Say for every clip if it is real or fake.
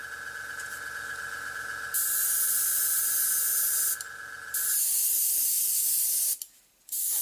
real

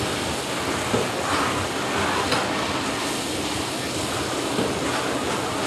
real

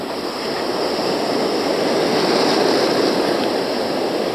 real